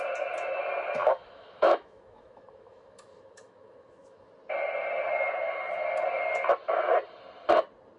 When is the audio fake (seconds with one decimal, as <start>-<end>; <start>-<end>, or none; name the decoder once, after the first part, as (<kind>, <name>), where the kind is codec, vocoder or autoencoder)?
1.0-4.3 (autoencoder, DAC-VAE)